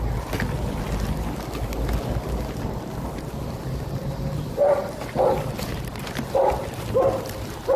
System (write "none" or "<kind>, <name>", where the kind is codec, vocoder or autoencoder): none